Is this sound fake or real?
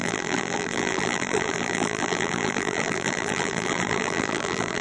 fake